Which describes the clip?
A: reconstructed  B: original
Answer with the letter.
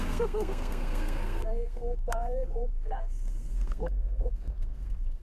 A